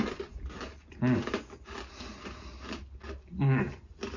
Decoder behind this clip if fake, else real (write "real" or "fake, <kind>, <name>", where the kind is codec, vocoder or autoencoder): real